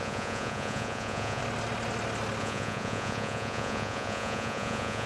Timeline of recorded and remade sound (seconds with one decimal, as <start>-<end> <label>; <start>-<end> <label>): 0.0-1.4 remade; 1.4-2.4 recorded; 2.4-5.1 remade